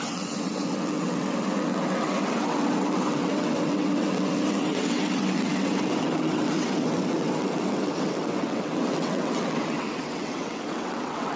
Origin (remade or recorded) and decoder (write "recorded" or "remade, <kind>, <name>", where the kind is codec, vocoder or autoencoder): remade, vocoder, WaveNeXt